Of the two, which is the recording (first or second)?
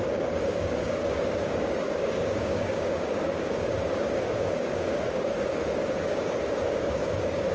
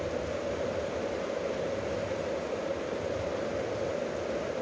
second